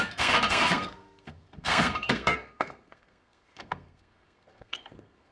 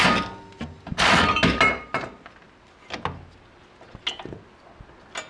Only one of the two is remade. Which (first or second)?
first